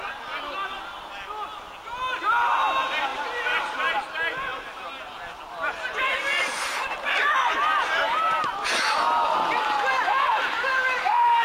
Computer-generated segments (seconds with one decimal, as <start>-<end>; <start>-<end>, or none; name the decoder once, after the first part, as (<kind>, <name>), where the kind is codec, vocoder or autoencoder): none